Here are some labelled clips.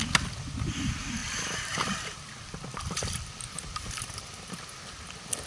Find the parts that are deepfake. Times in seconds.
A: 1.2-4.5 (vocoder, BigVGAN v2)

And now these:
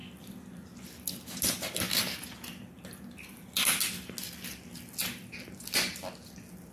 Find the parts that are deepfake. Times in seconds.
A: none

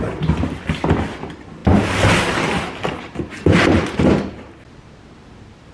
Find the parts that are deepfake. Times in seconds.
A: none

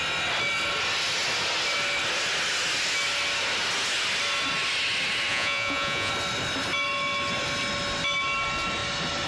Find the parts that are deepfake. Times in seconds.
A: 5.3-6.1 (vocoder, Vocos)

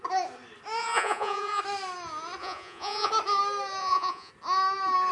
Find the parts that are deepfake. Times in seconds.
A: 0.8-1.6 (vocoder, Vocos); 2.4-3.1; 3.8-4.3

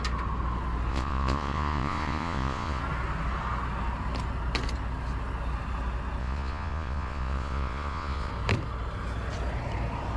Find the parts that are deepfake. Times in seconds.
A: 0.9-2.8 (vocoder, Vocos); 6.2-8.3